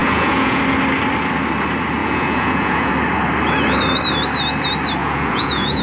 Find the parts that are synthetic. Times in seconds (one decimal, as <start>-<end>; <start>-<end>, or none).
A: 0.0-0.6; 2.0-2.9; 5.0-5.8